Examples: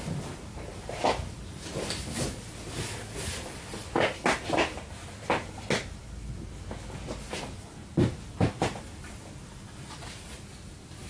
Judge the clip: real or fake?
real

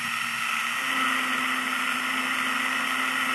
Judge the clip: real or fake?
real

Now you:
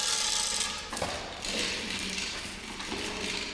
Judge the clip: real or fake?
real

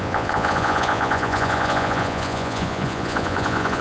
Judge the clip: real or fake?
fake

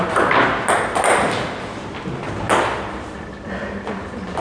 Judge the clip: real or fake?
real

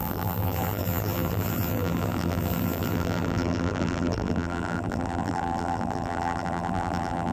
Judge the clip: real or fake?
fake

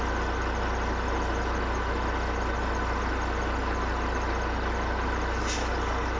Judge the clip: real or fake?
real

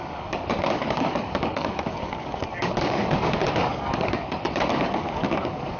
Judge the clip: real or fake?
fake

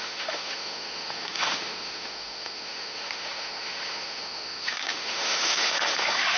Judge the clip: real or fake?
fake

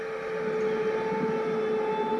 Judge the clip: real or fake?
real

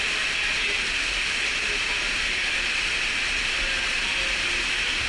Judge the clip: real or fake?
real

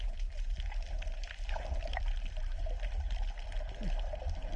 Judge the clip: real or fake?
real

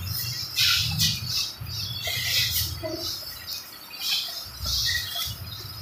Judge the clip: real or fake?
real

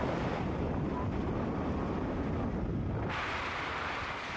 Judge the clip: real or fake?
real